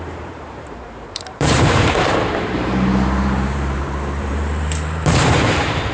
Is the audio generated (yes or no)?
yes